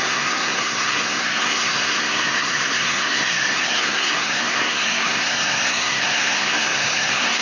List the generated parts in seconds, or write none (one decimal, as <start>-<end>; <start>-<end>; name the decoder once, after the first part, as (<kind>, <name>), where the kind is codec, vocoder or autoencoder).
0.0-7.4 (codec, SNAC)